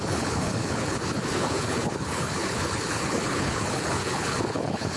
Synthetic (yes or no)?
yes